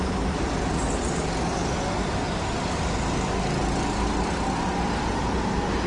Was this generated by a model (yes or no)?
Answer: no